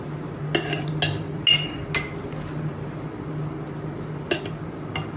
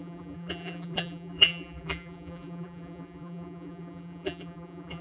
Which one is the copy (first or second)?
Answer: second